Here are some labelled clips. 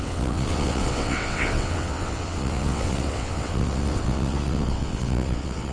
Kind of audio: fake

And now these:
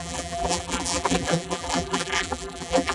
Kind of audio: fake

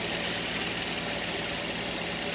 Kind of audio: real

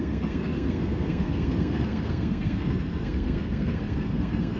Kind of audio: fake